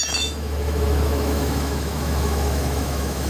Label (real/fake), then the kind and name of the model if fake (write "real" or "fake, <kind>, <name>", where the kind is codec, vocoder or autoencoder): fake, autoencoder, DAC-VAE